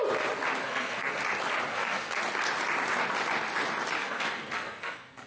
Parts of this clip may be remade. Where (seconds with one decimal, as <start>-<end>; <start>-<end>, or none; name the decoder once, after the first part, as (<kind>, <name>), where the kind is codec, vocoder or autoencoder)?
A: 0.6-1.2 (codec, SNAC); 1.7-2.2; 4.0-5.3